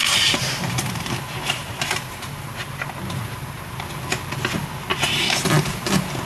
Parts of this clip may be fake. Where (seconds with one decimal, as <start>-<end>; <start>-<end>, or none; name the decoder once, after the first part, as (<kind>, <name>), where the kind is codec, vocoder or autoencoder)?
0.0-3.8 (vocoder, BigVGAN v2); 4.9-6.3